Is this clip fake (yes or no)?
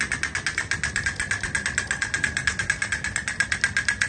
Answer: no